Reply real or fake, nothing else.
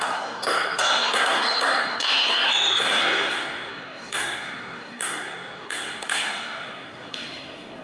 fake